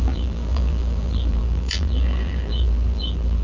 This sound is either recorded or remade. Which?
remade